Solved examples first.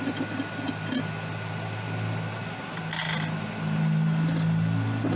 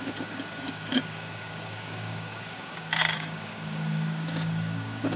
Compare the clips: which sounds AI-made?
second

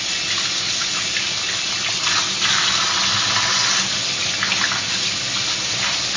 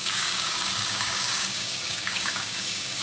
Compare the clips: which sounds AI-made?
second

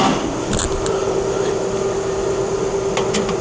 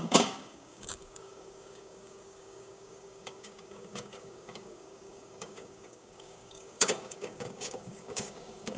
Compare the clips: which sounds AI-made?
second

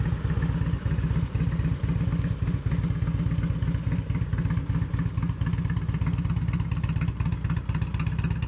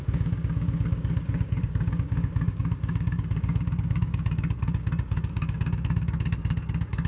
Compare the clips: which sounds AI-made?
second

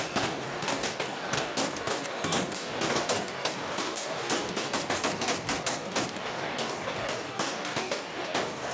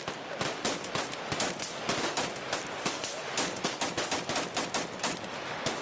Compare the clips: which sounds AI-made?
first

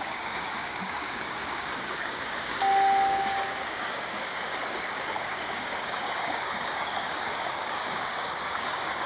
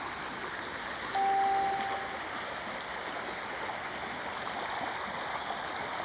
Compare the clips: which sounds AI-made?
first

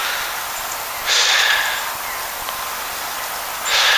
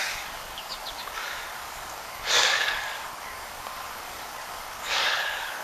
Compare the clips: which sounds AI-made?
second